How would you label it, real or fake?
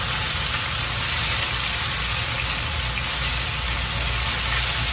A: real